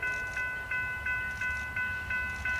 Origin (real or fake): real